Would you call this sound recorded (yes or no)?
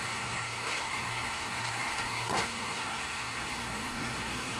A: no